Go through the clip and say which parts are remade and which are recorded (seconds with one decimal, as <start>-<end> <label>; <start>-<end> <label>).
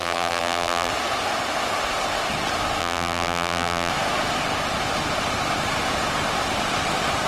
0.0-0.9 remade; 0.9-2.8 recorded; 2.8-3.9 remade; 3.9-7.3 recorded